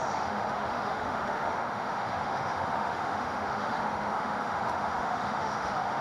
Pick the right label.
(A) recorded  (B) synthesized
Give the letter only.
B